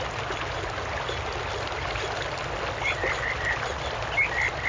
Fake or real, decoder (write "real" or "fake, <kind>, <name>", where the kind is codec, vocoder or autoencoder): real